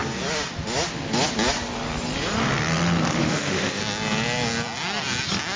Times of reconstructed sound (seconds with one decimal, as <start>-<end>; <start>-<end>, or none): 3.2-3.8